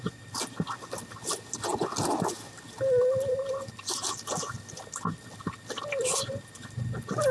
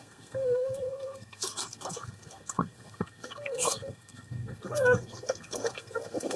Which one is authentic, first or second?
first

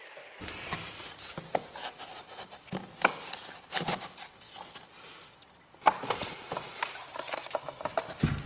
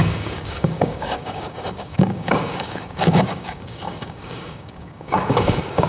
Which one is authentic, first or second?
first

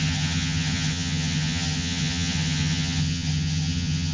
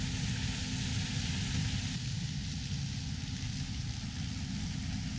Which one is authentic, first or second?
second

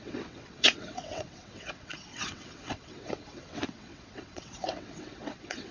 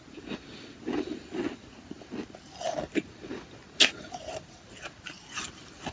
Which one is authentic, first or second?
second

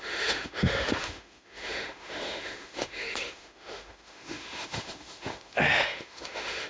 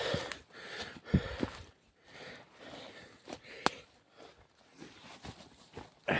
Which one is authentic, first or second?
second